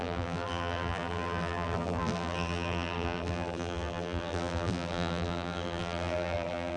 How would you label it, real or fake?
fake